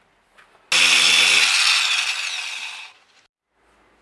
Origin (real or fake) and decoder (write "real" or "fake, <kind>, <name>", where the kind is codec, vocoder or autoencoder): real